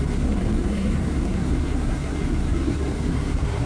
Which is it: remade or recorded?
remade